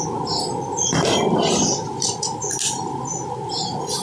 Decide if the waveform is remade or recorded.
recorded